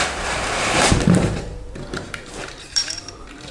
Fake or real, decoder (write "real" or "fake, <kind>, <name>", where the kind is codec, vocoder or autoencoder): fake, vocoder, BigVGAN v2